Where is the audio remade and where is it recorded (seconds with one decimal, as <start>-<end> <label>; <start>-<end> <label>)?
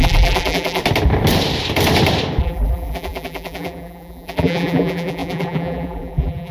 0.0-0.8 remade; 0.8-2.4 recorded; 2.4-6.5 remade